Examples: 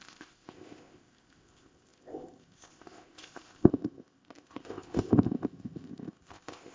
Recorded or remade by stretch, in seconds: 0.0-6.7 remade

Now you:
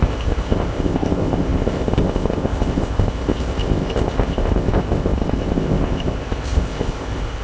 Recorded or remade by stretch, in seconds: 0.0-7.4 remade

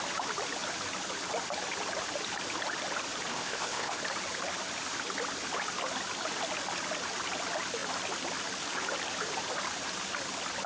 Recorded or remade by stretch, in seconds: 0.0-3.3 recorded; 3.3-4.0 remade; 4.0-10.7 recorded

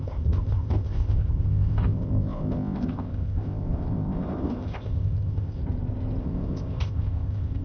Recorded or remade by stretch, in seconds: 0.0-5.6 remade; 5.6-6.2 recorded; 6.2-7.6 remade

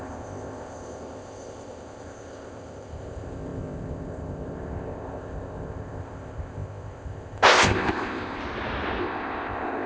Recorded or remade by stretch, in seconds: 0.0-8.4 remade; 8.4-9.0 recorded; 9.0-9.9 remade